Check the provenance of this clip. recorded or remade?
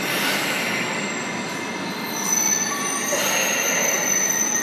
recorded